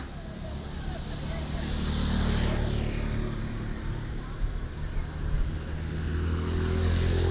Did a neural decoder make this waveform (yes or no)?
no